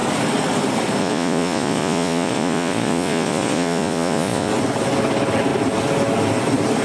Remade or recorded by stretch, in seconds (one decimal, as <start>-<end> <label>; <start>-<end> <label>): 0.0-1.0 recorded; 1.0-4.5 remade; 4.5-6.8 recorded

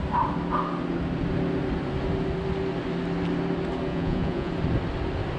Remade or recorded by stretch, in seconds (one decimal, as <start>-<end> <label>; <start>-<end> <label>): 0.0-3.9 recorded; 3.9-4.5 remade; 4.5-5.4 recorded

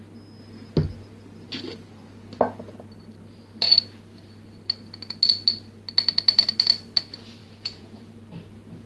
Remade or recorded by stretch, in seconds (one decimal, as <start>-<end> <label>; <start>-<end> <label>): 0.0-7.4 recorded; 7.4-8.1 remade; 8.1-8.9 recorded

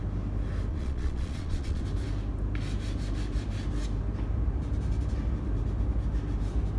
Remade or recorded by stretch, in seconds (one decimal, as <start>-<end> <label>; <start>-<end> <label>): 0.0-0.7 recorded; 0.7-1.8 remade; 1.8-6.8 recorded